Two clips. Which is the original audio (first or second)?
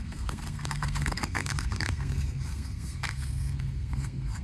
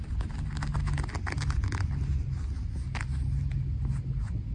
second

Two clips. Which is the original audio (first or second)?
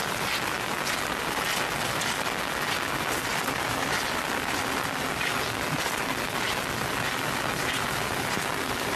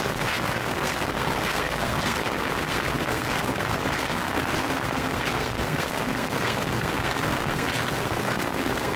first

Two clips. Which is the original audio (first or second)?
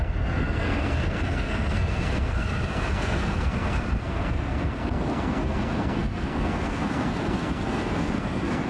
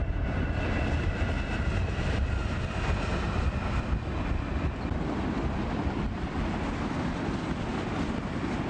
second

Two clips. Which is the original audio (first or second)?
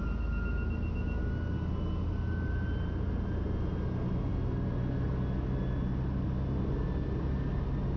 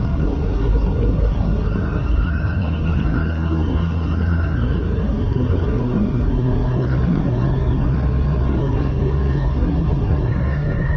first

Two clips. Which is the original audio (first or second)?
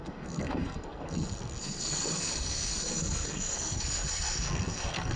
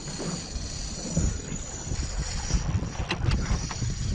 second